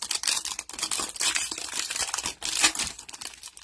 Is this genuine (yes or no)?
yes